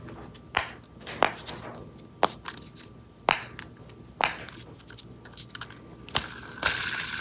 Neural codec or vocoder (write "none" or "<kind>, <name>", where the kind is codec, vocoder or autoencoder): none